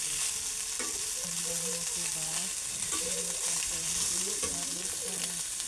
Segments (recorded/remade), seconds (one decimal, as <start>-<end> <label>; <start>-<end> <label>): 0.0-2.7 recorded; 2.7-4.2 remade; 4.2-5.7 recorded